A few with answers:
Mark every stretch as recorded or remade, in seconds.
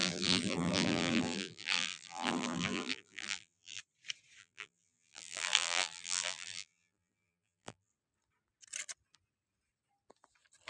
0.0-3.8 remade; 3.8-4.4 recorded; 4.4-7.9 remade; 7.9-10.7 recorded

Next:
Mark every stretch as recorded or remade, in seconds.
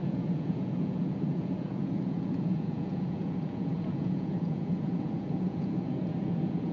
0.0-6.7 remade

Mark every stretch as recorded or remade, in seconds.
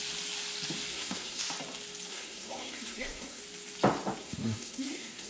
0.0-0.9 recorded; 0.9-1.4 remade; 1.4-2.1 recorded; 2.1-3.4 remade; 3.4-4.2 recorded; 4.2-5.3 remade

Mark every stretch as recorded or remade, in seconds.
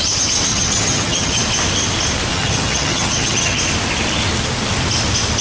0.0-0.5 recorded; 0.5-1.4 remade; 1.4-2.3 recorded; 2.3-3.6 remade; 3.6-5.4 recorded